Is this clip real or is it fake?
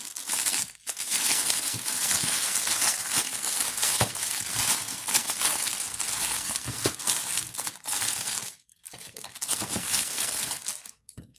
fake